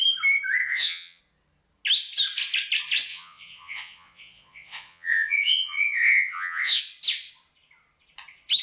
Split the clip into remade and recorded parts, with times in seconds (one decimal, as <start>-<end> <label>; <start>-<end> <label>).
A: 0.0-0.6 recorded; 0.6-1.2 remade; 1.2-3.1 recorded; 3.1-6.8 remade; 6.8-8.6 recorded